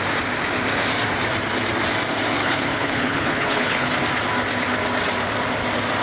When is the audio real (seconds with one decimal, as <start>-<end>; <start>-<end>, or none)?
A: 0.0-2.4; 3.9-6.0